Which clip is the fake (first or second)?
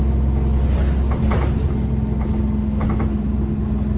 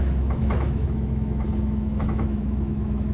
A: second